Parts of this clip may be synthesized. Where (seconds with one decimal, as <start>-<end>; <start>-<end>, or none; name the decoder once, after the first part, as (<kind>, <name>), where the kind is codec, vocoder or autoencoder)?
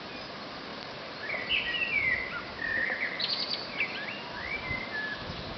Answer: none